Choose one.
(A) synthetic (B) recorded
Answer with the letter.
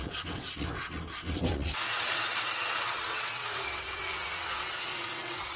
A